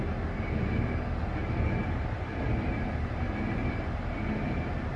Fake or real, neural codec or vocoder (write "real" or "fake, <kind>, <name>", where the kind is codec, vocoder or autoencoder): real